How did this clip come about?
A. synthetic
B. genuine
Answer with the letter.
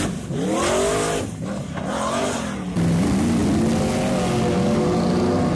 B